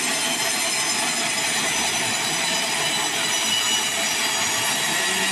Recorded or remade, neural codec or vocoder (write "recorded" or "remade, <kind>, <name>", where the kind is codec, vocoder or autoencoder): recorded